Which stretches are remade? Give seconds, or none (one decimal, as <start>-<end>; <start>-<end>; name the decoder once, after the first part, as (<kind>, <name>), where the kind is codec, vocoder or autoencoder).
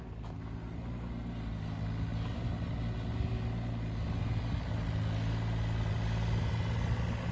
none